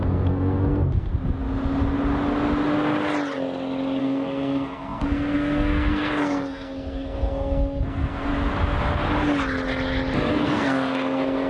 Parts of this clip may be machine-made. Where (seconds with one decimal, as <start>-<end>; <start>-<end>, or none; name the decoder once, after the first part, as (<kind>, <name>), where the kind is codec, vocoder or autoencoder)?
0.0-1.1 (codec, SNAC); 4.0-8.3; 10.3-11.5